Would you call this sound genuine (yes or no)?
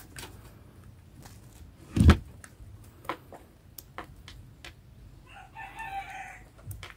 yes